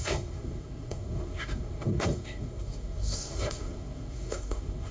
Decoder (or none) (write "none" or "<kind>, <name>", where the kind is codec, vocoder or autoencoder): codec, SNAC